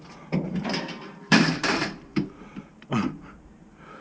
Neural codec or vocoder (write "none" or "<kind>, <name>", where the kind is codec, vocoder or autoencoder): vocoder, BigVGAN v2